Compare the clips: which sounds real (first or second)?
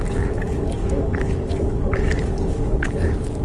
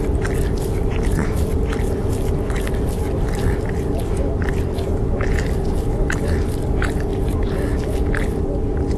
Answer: second